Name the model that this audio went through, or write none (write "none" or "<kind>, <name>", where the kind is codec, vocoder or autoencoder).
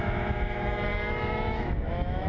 autoencoder, DAC-VAE